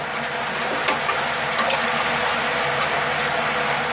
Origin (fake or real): real